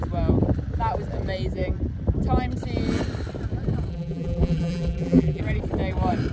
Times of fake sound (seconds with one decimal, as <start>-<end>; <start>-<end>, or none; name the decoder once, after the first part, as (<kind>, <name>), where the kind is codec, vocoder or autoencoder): 3.9-5.4 (vocoder, BigVGAN v2)